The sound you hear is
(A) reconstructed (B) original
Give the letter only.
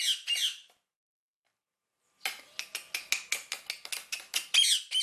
B